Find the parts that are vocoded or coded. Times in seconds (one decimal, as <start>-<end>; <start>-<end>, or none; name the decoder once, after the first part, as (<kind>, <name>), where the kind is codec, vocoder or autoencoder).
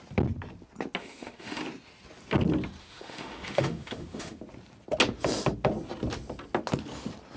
1.0-1.6 (autoencoder, DAC-VAE); 2.8-4.4